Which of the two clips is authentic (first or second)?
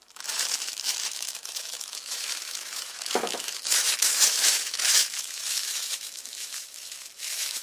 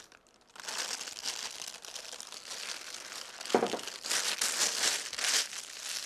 second